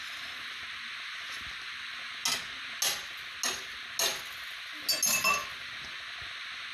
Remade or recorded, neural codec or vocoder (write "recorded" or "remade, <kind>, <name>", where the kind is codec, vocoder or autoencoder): recorded